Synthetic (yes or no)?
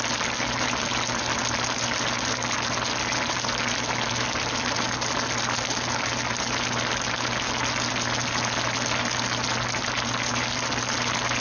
no